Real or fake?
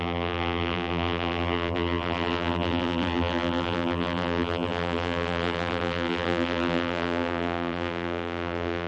fake